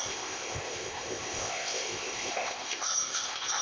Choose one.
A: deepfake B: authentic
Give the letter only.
A